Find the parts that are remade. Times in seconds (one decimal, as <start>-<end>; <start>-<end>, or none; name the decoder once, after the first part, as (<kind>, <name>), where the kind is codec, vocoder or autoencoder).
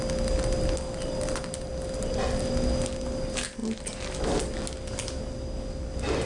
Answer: none